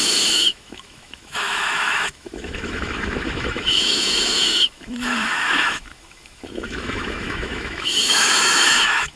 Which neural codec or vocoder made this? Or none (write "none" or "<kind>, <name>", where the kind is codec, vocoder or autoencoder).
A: autoencoder, DAC-VAE